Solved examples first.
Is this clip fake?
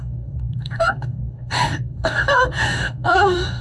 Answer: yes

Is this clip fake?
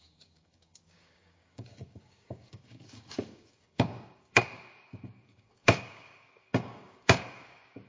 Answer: yes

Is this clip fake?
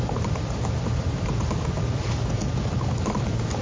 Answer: no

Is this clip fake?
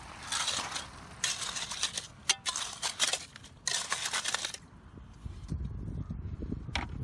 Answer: no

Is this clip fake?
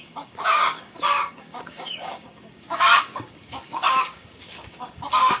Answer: yes